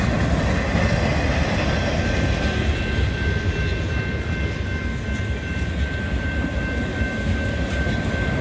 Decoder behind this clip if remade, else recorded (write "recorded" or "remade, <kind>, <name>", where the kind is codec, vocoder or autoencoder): recorded